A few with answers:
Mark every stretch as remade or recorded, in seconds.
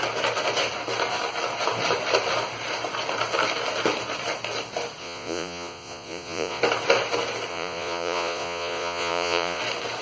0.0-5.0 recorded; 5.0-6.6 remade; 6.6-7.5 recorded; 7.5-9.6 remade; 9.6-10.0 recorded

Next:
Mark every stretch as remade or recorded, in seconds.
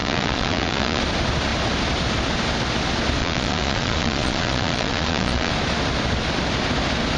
0.0-1.0 remade; 1.0-3.2 recorded; 3.2-5.5 remade; 5.5-7.2 recorded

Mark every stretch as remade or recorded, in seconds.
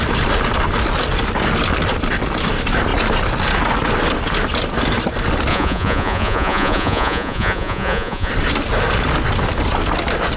0.0-5.5 recorded; 5.5-8.3 remade; 8.3-10.4 recorded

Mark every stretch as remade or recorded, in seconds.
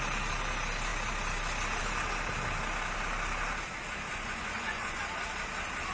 0.0-4.1 recorded; 4.1-5.0 remade; 5.0-5.9 recorded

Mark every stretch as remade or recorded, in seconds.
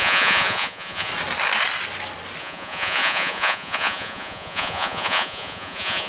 0.0-1.1 remade; 1.1-2.4 recorded; 2.4-6.1 remade